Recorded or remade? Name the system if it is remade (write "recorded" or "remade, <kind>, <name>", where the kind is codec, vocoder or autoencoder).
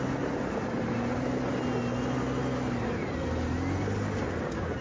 recorded